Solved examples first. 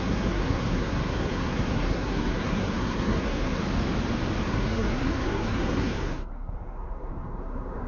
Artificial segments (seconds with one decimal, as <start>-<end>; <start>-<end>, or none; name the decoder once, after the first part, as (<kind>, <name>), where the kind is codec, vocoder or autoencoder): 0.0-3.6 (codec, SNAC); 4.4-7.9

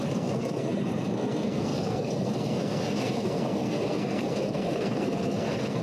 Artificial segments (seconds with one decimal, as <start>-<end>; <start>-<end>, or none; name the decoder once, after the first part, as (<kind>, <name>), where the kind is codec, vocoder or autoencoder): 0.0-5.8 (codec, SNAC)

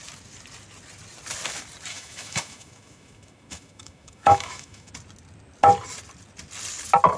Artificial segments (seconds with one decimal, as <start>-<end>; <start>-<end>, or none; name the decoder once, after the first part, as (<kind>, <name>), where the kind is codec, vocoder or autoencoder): 1.9-4.9 (autoencoder, DAC-VAE)

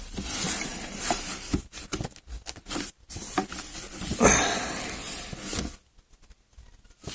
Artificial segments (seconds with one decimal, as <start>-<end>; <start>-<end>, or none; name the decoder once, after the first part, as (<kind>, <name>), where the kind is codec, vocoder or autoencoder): 0.7-2.0 (vocoder, BigVGAN v2)

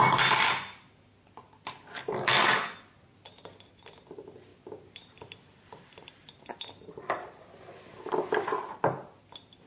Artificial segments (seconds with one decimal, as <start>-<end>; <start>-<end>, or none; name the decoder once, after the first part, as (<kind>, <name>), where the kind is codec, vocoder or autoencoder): none

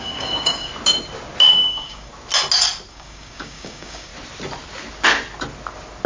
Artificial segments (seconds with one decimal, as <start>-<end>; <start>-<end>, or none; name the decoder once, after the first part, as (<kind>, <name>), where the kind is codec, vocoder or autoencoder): 0.0-0.7 (codec, DAC); 1.5-2.1; 2.9-4.1